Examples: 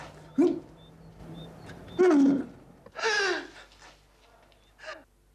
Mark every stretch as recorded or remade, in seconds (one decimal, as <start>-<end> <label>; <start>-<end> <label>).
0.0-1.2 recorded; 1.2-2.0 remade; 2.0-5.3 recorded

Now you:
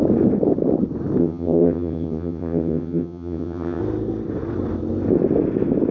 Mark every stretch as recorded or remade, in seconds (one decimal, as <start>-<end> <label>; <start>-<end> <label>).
0.0-1.2 recorded; 1.2-3.8 remade; 3.8-5.9 recorded

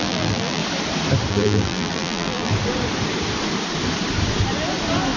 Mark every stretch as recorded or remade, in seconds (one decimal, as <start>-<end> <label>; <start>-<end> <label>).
0.0-0.6 remade; 0.6-1.3 recorded; 1.3-2.5 remade; 2.5-5.2 recorded

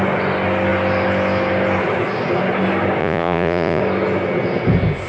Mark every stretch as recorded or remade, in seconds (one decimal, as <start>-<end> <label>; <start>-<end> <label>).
0.0-3.0 recorded; 3.0-3.8 remade; 3.8-5.1 recorded